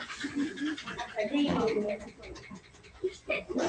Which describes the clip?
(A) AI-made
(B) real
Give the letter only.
A